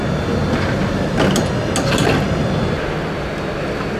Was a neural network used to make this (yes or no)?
no